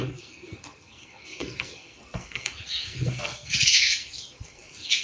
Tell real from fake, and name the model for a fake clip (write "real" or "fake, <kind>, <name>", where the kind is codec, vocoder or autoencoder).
fake, codec, SNAC